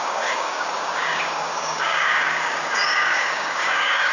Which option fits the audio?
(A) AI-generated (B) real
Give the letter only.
A